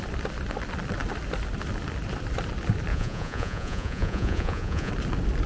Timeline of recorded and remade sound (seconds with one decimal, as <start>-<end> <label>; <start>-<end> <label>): 0.0-2.9 recorded; 2.9-4.9 remade; 4.9-5.5 recorded